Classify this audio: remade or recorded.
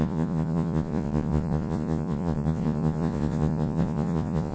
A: remade